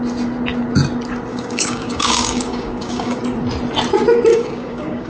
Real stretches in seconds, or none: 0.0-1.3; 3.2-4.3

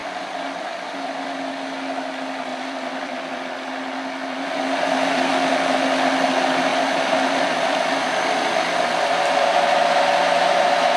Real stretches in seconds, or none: 1.4-2.5; 3.4-4.3; 5.3-6.7; 10.0-11.0

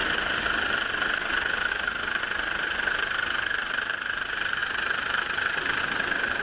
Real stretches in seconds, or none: 0.0-6.4

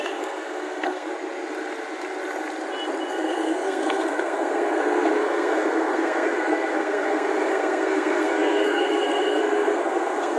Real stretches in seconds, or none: 1.1-3.1

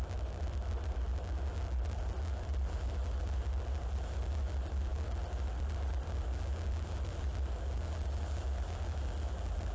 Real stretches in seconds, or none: 0.0-9.7